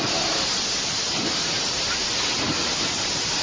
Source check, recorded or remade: recorded